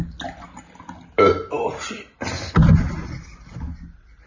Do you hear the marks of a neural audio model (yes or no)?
no